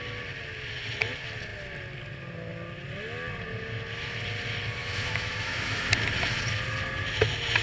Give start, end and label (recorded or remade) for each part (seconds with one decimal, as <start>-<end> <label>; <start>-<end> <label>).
0.0-4.8 recorded; 4.8-5.9 remade; 5.9-7.6 recorded

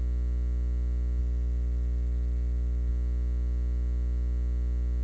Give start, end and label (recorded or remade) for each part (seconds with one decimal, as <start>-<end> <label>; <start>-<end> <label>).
0.0-1.2 recorded; 1.2-2.9 remade; 2.9-5.0 recorded

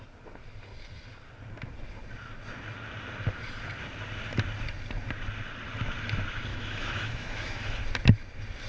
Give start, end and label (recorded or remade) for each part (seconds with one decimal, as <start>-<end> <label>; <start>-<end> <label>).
0.0-6.5 recorded; 6.5-7.8 remade; 7.8-8.7 recorded

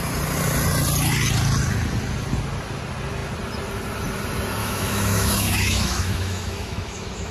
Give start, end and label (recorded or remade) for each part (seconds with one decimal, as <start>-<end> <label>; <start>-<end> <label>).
0.0-4.6 recorded; 4.6-7.3 remade

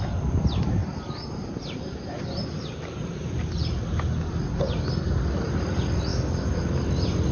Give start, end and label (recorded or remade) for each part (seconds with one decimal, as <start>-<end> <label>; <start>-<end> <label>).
0.0-6.1 recorded; 6.1-6.6 remade; 6.6-7.3 recorded

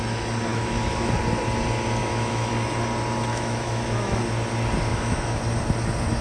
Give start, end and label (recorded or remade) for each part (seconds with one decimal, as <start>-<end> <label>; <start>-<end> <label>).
0.0-0.5 recorded; 0.5-1.1 remade; 1.1-2.0 recorded; 2.0-2.5 remade; 2.5-3.3 recorded; 3.3-4.2 remade; 4.2-4.9 recorded; 4.9-5.4 remade; 5.4-6.2 recorded

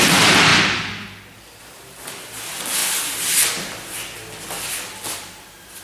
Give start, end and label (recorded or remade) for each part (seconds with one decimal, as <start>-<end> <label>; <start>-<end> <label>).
0.0-5.8 recorded